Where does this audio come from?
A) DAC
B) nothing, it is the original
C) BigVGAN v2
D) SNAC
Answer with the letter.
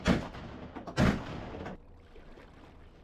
B